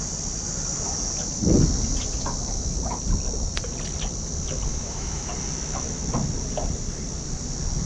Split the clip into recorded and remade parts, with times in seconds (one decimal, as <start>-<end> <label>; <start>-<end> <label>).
0.0-4.7 recorded; 4.7-5.3 remade; 5.3-7.9 recorded